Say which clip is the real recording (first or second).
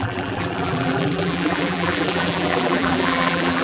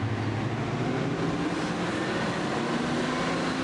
second